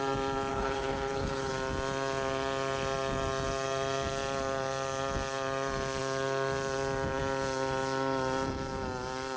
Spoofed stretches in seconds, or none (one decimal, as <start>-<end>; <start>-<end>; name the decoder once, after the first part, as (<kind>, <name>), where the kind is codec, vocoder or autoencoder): 0.5-1.5 (codec, HILCodec)